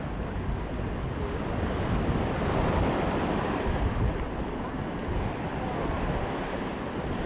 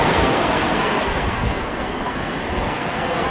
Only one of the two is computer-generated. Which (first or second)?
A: second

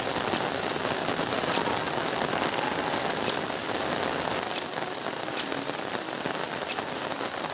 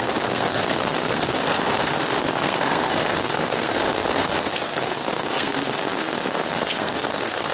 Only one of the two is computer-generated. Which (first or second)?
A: second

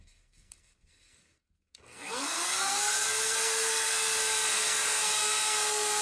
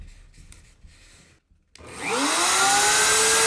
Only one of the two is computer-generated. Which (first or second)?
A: first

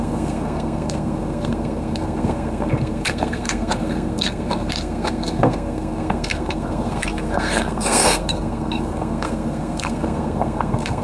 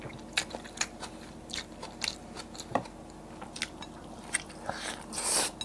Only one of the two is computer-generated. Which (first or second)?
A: first